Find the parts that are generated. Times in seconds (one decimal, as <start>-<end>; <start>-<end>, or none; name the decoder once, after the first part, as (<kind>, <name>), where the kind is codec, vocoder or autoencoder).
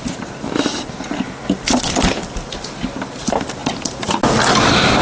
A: none